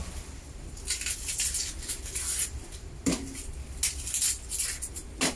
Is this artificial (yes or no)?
no